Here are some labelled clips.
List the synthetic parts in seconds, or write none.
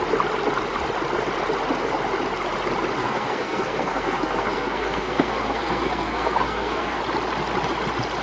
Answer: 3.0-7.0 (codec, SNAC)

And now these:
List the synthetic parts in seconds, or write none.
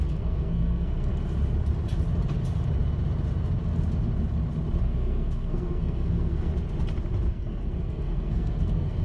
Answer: 0.0-1.1 (codec, SNAC); 4.8-6.5; 7.3-9.0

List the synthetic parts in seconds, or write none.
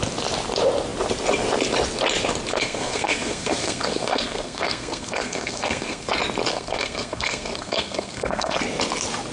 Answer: 2.5-6.1 (codec, SNAC); 6.5-8.6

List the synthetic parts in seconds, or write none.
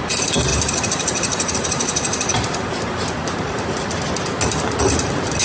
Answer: 0.5-3.7 (vocoder, BigVGAN v2)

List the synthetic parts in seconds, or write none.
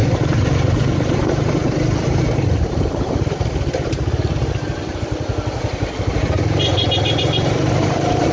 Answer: 0.0-8.3 (vocoder, BigVGAN v2)